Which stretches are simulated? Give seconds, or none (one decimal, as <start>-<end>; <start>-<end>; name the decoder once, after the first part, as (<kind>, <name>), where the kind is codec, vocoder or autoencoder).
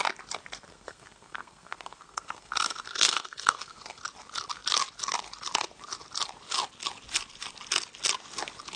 0.7-4.0 (codec, SNAC)